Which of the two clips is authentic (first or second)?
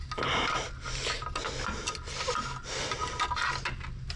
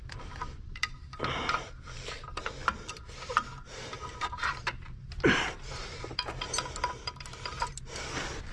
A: first